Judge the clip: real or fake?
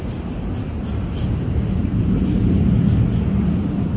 real